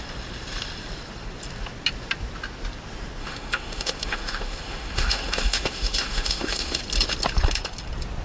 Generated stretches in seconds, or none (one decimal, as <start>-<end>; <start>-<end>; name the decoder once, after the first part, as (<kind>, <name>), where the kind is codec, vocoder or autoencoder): 3.2-6.8 (autoencoder, DAC-VAE)